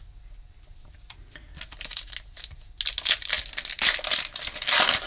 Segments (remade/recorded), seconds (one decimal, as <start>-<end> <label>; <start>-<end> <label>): 0.0-5.1 recorded